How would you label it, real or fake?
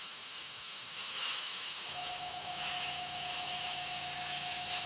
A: fake